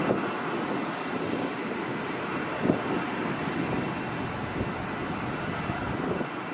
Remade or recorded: recorded